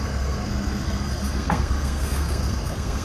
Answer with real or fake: fake